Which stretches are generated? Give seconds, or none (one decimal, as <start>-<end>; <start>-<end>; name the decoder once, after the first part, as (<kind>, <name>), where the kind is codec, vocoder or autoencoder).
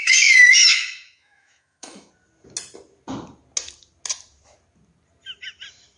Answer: 0.0-2.1 (autoencoder, DAC-VAE)